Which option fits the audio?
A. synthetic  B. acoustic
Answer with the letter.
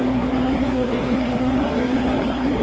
A